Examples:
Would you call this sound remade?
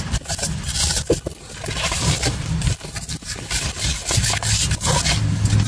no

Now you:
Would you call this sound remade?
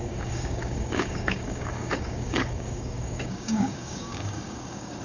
yes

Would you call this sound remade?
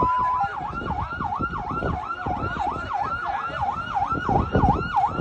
no